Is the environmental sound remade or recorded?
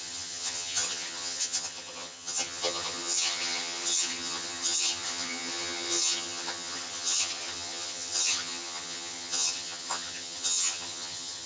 remade